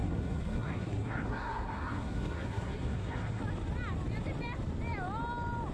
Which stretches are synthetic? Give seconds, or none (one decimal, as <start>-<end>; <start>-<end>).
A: 0.0-3.4